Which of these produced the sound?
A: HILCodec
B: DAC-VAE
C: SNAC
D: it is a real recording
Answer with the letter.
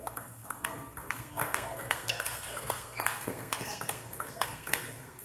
C